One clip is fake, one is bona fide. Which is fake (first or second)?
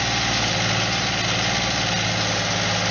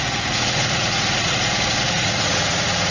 second